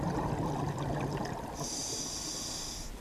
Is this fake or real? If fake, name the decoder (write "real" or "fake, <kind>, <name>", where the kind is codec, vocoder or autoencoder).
real